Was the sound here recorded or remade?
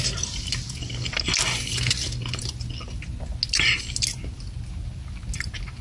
recorded